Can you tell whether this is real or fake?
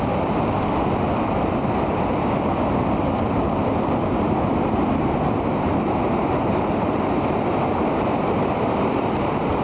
real